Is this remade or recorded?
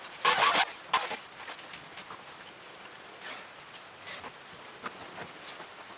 recorded